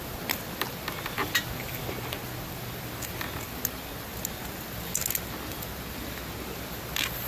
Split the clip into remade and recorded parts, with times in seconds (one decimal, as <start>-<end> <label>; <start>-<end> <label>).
0.0-7.3 recorded

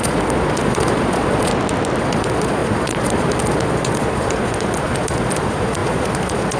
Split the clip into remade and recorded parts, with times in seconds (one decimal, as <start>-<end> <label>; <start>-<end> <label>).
0.0-1.5 remade; 1.5-2.0 recorded; 2.0-6.6 remade

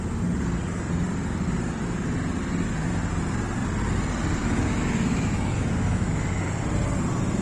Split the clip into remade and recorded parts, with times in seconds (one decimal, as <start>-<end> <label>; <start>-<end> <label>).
0.0-4.4 recorded; 4.4-6.4 remade; 6.4-7.4 recorded